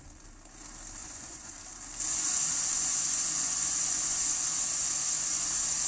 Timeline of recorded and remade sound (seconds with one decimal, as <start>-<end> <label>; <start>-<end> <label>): 0.0-1.0 recorded; 1.0-1.5 remade; 1.5-2.1 recorded; 2.1-5.9 remade